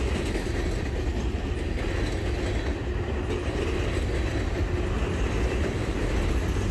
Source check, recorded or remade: recorded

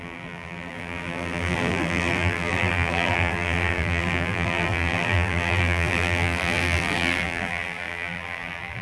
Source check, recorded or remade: remade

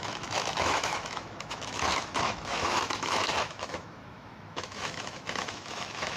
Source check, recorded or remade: remade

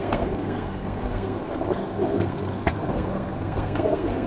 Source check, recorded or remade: remade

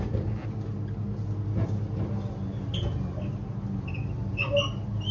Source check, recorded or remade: recorded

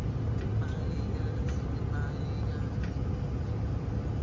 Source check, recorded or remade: recorded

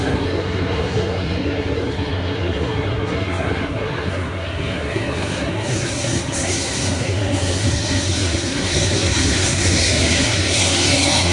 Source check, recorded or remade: remade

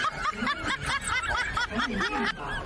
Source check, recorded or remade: recorded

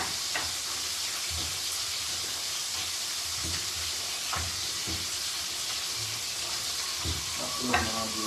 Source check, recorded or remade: recorded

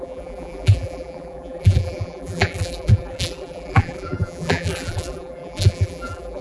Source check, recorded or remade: remade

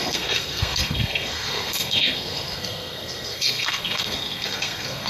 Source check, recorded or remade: remade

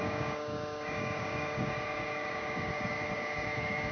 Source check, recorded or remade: remade